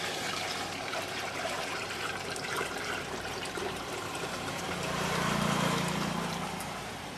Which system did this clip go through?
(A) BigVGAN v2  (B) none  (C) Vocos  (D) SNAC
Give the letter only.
A